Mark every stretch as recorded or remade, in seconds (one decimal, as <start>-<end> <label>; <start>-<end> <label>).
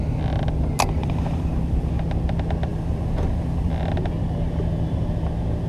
0.0-1.0 recorded; 1.0-1.9 remade; 1.9-2.7 recorded; 2.7-3.8 remade; 3.8-5.7 recorded